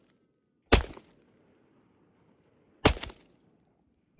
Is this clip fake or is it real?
real